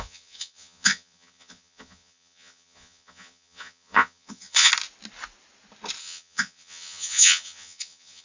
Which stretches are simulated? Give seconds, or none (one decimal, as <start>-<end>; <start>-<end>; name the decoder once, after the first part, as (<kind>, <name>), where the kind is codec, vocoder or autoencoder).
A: 0.0-4.7 (vocoder, Vocos); 6.0-8.2